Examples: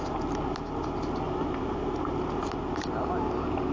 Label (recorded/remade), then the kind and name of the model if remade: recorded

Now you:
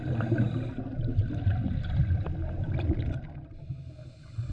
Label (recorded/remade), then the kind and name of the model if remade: recorded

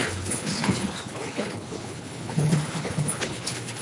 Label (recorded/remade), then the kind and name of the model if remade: remade, codec, HILCodec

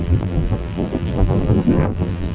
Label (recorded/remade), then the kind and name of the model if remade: remade, vocoder, BigVGAN v2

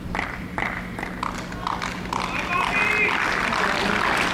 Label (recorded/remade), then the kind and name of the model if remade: recorded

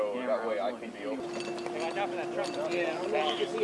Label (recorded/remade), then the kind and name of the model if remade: recorded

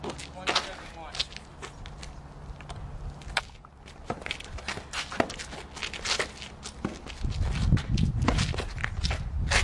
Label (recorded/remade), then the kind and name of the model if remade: recorded